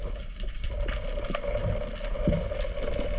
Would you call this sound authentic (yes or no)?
yes